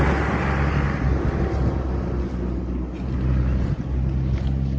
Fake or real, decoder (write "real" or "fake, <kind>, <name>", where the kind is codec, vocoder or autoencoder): real